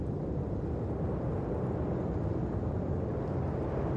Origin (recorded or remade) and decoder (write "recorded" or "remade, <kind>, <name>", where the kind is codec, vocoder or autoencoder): recorded